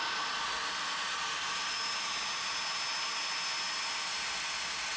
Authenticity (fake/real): real